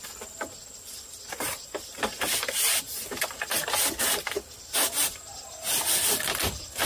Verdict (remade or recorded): recorded